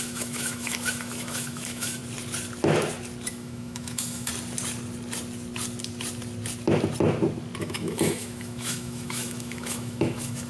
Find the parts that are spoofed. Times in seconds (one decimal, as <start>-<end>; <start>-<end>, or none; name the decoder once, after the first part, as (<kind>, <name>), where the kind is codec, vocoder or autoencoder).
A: 0.0-2.0 (autoencoder, DAC-VAE); 3.3-4.3; 7.6-10.5